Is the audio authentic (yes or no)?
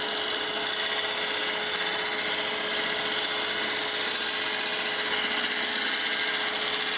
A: yes